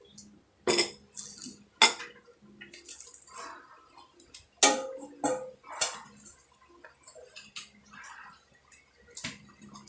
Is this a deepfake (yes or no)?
no